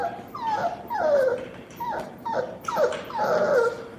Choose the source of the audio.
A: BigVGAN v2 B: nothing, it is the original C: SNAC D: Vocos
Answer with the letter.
B